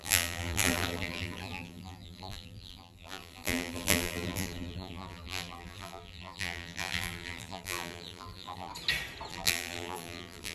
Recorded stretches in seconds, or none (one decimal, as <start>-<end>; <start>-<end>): 8.7-9.3